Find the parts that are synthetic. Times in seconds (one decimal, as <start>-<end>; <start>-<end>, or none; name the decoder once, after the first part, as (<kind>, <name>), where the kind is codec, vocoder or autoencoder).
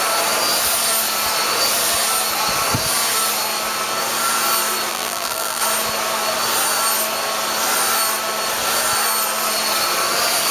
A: 4.9-5.6 (vocoder, BigVGAN v2)